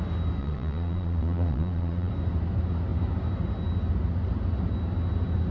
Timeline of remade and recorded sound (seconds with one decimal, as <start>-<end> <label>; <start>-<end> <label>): 0.0-0.4 recorded; 0.4-2.1 remade; 2.1-5.5 recorded